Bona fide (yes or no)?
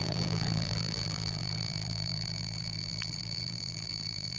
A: no